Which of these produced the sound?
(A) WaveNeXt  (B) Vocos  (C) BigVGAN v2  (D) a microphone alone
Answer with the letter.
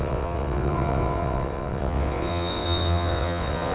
A